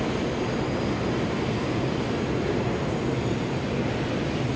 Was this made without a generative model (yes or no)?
yes